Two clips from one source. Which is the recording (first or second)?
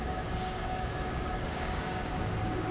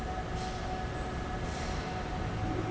second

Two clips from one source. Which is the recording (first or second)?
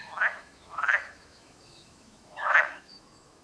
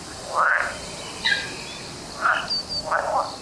second